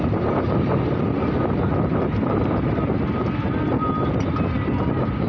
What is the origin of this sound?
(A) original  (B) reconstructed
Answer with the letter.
A